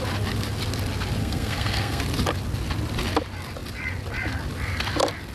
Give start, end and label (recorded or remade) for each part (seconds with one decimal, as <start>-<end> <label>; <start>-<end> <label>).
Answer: 0.0-1.2 recorded; 1.2-2.0 remade; 2.0-5.3 recorded